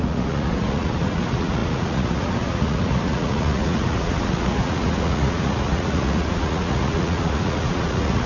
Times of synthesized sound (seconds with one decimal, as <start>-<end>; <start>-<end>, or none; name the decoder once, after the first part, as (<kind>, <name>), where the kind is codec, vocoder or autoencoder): 0.0-8.3 (vocoder, Vocos)

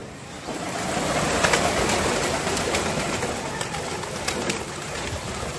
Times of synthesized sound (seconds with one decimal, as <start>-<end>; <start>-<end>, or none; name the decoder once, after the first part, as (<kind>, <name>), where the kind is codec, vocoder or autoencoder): none

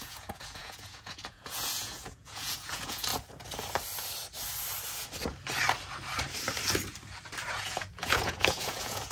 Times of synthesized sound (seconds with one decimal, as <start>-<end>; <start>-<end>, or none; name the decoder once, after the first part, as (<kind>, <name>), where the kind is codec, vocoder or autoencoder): 0.0-3.1 (vocoder, Vocos); 7.5-9.1

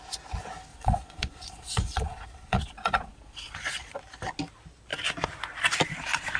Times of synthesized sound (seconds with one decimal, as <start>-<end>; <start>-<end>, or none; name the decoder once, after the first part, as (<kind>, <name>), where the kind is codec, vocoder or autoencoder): 0.7-4.0 (vocoder, Vocos)